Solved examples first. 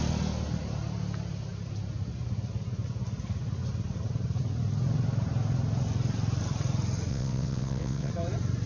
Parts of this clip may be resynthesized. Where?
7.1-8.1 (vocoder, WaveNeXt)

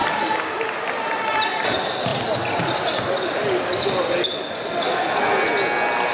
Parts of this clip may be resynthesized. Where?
none

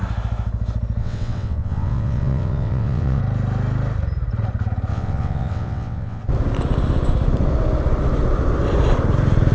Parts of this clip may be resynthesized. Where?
1.0-3.2 (vocoder, WaveNeXt); 4.9-6.2

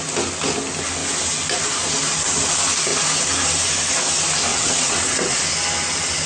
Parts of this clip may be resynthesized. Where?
4.5-5.4 (vocoder, WaveNeXt)

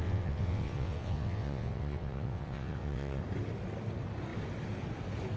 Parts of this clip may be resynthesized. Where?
0.0-3.2 (vocoder, WaveNeXt)

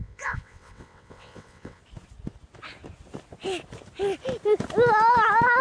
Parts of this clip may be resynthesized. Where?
0.0-1.8 (vocoder, WaveNeXt)

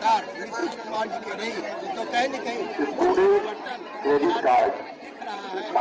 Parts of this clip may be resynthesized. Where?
0.6-1.6 (vocoder, WaveNeXt); 3.4-4.0; 4.5-5.8